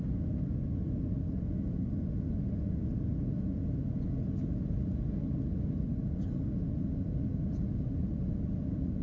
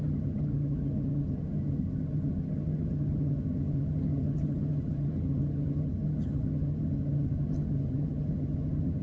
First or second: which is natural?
first